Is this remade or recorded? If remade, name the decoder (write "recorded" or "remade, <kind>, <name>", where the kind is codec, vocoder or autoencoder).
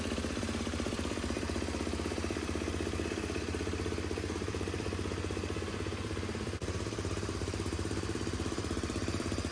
remade, vocoder, BigVGAN v2